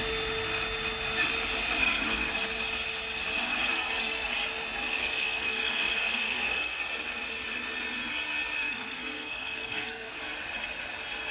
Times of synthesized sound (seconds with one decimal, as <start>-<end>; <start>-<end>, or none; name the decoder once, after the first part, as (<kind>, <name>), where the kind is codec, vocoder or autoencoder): 1.8-2.3 (codec, SNAC); 3.5-4.3; 5.0-6.8; 8.6-10.2

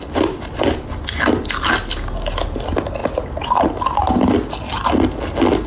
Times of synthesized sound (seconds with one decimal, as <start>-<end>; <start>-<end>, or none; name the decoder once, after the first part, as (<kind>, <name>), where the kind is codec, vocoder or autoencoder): none

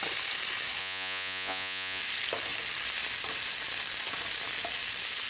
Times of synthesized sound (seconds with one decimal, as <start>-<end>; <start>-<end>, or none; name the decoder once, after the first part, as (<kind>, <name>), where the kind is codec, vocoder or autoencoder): 0.8-2.0 (vocoder, Vocos)

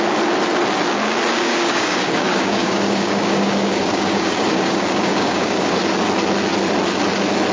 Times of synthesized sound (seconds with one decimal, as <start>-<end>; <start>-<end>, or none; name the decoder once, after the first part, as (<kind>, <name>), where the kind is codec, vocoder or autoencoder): 1.3-5.8 (codec, DAC)

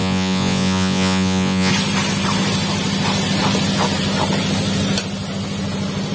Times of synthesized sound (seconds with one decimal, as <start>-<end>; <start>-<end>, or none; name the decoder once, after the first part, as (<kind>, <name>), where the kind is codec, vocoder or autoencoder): 0.0-1.7 (vocoder, Vocos)